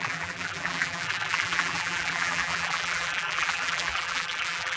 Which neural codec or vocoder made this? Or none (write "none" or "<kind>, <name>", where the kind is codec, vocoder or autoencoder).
vocoder, BigVGAN v2